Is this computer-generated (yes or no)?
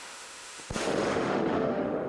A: yes